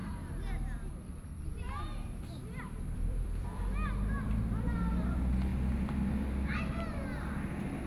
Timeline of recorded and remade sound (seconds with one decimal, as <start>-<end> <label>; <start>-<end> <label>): 0.0-4.5 remade; 4.5-7.9 recorded

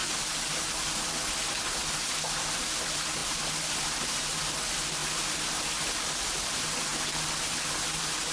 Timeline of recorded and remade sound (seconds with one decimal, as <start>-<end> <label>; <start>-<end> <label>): 0.0-2.5 recorded; 2.5-5.0 remade; 5.0-6.0 recorded; 6.0-8.3 remade

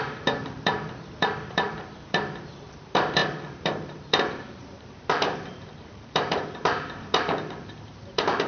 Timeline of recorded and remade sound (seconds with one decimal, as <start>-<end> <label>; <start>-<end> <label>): 0.0-8.5 remade

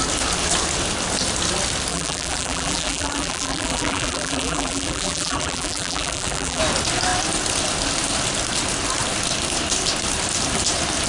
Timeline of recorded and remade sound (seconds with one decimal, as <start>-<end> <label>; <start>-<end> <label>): 0.0-1.9 recorded; 1.9-6.6 remade; 6.6-11.1 recorded

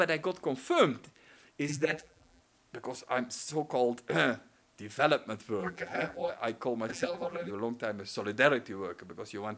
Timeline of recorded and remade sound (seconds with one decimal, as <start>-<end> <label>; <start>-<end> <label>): 0.0-1.7 recorded; 1.7-2.4 remade; 2.4-5.6 recorded; 5.6-6.3 remade; 6.3-6.9 recorded; 6.9-7.5 remade; 7.5-9.6 recorded